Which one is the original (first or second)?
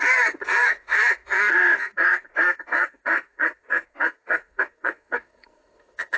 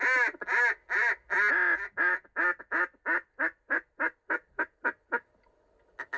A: second